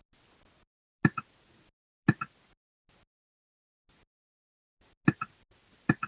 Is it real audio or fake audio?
real